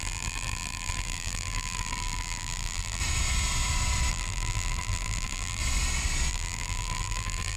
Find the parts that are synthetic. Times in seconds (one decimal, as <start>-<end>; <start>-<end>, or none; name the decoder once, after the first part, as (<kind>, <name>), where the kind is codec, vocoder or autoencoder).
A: 0.0-3.0 (vocoder, BigVGAN v2); 4.1-5.6; 6.3-7.6